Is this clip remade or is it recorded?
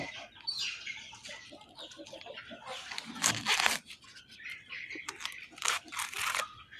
remade